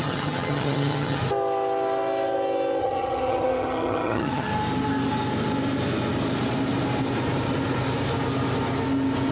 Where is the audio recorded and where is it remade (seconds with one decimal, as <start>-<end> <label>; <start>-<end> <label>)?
0.0-1.2 remade; 1.2-2.8 recorded; 2.8-4.5 remade; 4.5-9.3 recorded

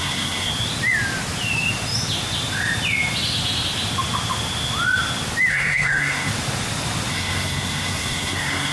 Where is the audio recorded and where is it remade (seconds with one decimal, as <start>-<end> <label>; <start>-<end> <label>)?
0.0-0.5 remade; 0.5-5.5 recorded; 5.5-6.3 remade; 6.3-7.1 recorded; 7.1-8.7 remade

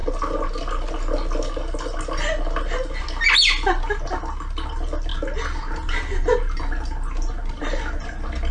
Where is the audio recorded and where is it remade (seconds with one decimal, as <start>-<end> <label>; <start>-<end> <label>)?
0.0-8.5 recorded

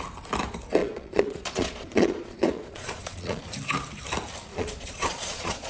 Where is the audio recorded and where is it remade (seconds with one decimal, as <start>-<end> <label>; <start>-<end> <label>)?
0.0-0.8 recorded; 0.8-3.4 remade; 3.4-4.5 recorded; 4.5-5.7 remade